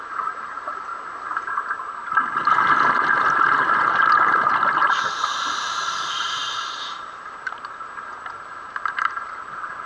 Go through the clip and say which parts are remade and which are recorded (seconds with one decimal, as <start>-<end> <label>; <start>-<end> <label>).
0.0-0.9 remade; 0.9-3.9 recorded; 3.9-9.9 remade